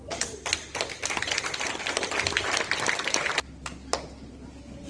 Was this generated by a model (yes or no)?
no